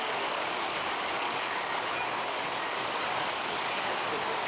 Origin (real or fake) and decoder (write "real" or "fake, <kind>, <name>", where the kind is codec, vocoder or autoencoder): fake, codec, DAC